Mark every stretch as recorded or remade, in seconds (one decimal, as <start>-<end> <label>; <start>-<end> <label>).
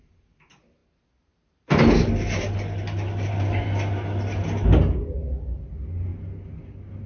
0.0-7.1 recorded